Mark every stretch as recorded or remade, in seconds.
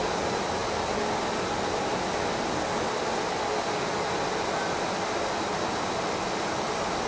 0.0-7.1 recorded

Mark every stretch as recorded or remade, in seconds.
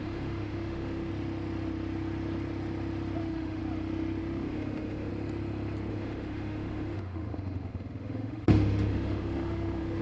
0.0-1.1 remade; 1.1-3.2 recorded; 3.2-3.6 remade; 3.6-4.2 recorded; 4.2-5.1 remade; 5.1-5.9 recorded; 5.9-10.0 remade